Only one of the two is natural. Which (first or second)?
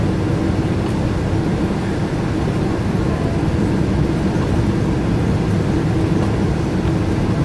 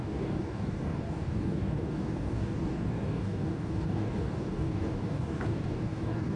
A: first